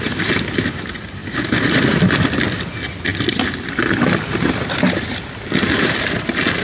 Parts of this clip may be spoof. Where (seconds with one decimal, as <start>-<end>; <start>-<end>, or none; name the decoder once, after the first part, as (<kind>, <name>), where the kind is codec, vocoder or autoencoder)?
0.0-6.6 (vocoder, BigVGAN v2)

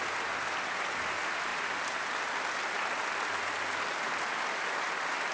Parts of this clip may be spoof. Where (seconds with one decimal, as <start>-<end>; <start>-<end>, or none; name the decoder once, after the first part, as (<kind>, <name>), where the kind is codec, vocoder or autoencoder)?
none

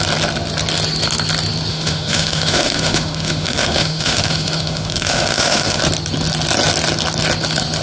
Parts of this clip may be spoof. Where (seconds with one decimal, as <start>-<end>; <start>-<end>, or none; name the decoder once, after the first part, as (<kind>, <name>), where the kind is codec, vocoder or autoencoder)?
1.7-5.8 (autoencoder, DAC-VAE)

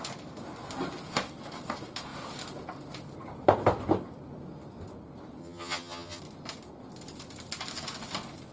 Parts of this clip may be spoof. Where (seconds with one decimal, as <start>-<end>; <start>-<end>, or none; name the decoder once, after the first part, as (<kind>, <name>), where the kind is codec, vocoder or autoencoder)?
5.4-6.2 (vocoder, HiFi-GAN)

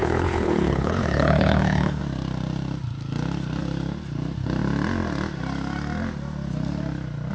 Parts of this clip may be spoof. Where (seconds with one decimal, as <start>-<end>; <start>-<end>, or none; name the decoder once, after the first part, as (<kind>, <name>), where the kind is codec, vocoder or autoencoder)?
0.0-2.0 (codec, HILCodec)

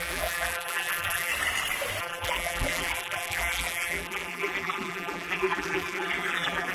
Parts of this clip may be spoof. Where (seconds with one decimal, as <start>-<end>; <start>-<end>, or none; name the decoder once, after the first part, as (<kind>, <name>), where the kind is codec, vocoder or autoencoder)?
0.0-1.3 (vocoder, BigVGAN v2); 2.0-6.7